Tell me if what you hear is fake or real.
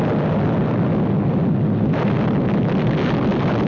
real